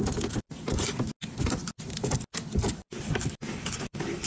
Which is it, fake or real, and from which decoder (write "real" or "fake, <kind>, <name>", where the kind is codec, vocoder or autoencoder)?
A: real